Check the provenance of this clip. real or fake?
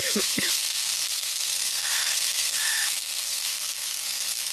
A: fake